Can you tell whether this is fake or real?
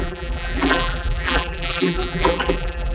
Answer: fake